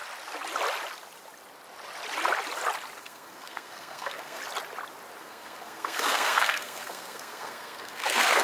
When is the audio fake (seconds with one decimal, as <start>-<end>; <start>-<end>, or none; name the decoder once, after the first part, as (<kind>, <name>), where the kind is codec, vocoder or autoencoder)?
3.0-4.4 (codec, SNAC); 5.2-8.4